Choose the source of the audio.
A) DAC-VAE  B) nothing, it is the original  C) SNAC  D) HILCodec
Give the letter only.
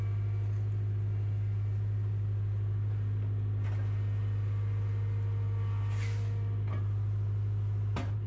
B